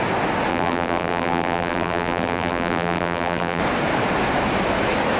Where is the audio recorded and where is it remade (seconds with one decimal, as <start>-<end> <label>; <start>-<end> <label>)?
0.0-0.5 recorded; 0.5-3.6 remade; 3.6-5.2 recorded